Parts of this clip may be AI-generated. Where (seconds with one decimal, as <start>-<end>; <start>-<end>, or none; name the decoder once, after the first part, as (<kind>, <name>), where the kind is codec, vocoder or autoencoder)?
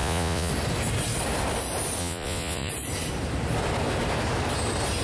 0.0-0.5 (vocoder, Vocos); 2.0-2.7